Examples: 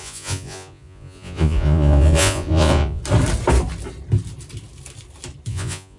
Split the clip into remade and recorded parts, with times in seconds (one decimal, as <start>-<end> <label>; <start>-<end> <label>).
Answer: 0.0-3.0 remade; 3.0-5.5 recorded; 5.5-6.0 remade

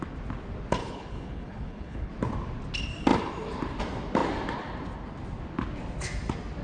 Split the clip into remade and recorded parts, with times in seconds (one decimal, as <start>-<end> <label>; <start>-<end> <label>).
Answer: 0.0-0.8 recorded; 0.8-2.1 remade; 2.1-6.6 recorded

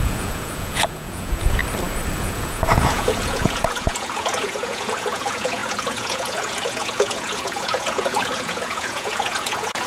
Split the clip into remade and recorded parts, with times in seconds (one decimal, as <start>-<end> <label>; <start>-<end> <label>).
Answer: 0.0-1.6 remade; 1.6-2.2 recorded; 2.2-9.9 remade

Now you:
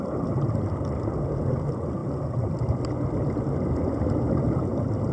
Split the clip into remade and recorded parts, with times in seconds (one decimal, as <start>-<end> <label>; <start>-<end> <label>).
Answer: 0.0-5.1 recorded